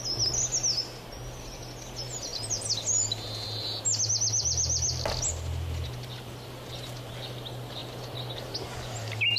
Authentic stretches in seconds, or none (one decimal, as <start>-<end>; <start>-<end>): 0.0-9.4